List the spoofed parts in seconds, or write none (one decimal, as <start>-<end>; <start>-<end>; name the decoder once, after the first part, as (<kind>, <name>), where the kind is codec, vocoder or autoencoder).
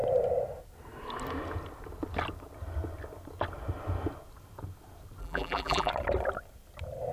5.2-5.9 (vocoder, BigVGAN v2)